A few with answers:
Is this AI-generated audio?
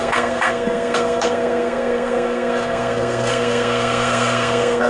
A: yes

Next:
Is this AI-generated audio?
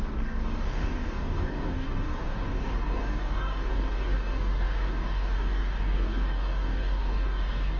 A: yes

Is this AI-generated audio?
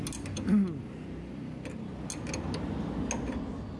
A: no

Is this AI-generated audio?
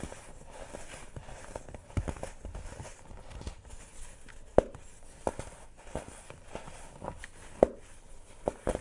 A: no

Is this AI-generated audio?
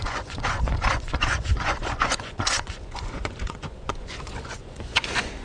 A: yes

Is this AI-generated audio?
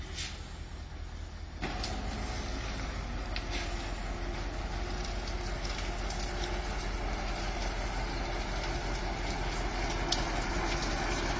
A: no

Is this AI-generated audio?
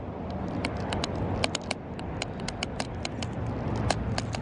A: no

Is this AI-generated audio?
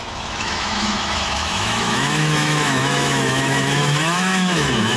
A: yes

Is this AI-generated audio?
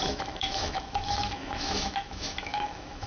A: yes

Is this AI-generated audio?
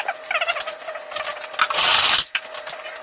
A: no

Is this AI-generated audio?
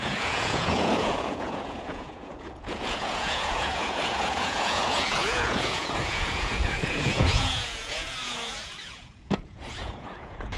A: yes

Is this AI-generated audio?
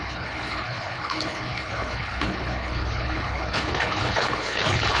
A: yes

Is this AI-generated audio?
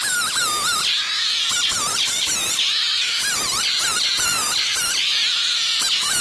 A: no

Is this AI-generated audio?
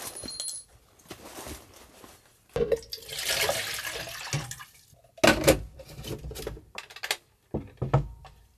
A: no